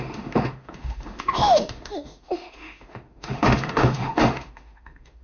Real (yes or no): no